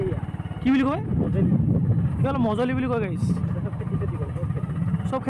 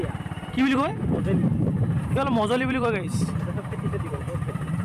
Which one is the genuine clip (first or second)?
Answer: first